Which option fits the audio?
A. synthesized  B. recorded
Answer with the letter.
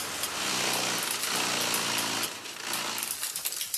B